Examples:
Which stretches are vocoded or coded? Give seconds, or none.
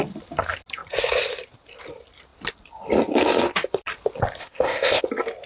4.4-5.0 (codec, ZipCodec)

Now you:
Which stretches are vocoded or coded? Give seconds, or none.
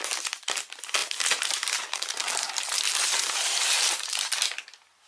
1.0-4.1 (vocoder, BigVGAN v2)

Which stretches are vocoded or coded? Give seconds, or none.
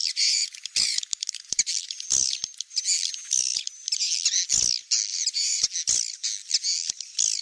0.0-1.7 (vocoder, BigVGAN v2); 5.1-5.7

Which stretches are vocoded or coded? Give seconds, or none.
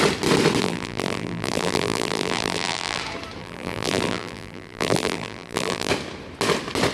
0.6-3.0 (vocoder, BigVGAN v2); 3.4-5.9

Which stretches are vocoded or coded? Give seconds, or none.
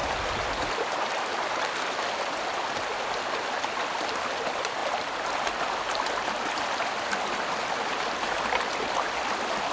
none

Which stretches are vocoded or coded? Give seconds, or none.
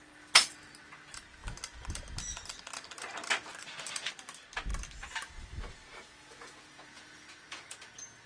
5.9-7.9 (vocoder, Vocos)